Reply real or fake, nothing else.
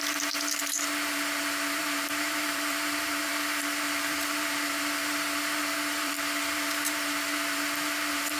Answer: fake